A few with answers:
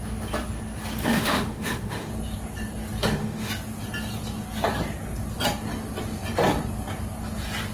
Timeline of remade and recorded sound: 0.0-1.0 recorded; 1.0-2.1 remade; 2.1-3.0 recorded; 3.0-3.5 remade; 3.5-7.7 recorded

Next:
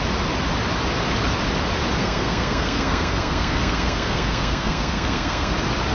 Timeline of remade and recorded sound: 0.0-2.0 recorded; 2.0-5.5 remade; 5.5-5.9 recorded